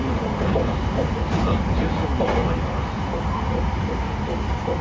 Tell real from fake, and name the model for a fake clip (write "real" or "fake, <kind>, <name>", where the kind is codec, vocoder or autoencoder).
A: real